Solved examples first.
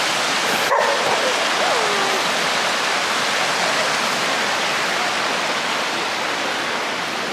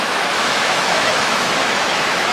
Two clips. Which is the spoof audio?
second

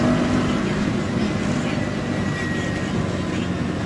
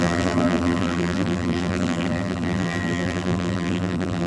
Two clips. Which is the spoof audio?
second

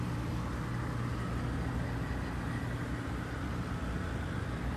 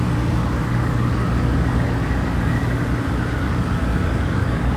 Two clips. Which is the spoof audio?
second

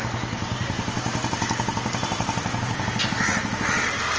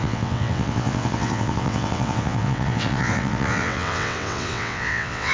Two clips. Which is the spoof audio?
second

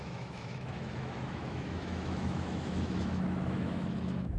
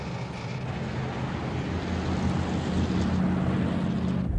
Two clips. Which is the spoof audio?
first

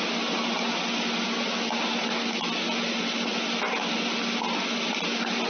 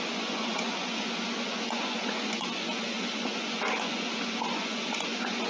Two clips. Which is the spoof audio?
second